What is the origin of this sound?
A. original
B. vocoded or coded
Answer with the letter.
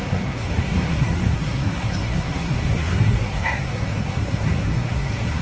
B